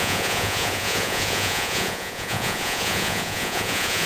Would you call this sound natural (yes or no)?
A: no